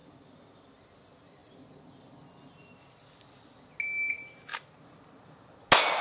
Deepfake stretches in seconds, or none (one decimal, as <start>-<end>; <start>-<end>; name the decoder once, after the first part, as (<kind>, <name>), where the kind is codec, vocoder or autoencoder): none